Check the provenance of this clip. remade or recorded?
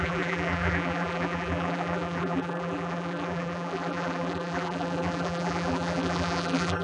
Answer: remade